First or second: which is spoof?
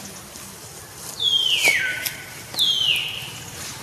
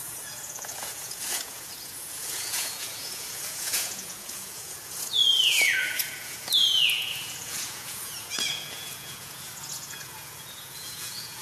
second